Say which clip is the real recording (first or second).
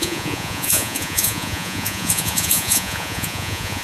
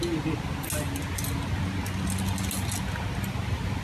second